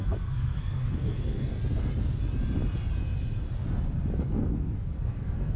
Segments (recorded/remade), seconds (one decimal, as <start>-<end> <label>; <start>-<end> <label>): 0.0-1.5 remade; 1.5-4.2 recorded; 4.2-5.6 remade